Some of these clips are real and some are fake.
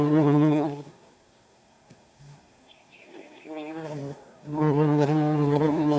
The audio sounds fake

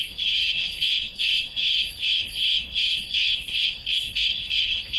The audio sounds fake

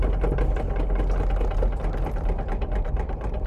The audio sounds real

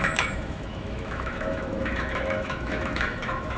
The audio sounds fake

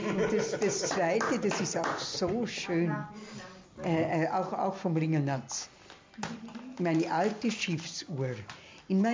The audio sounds real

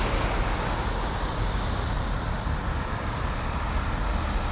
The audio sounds real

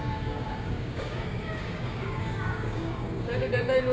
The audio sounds fake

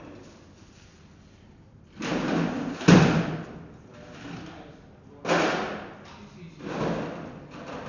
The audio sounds real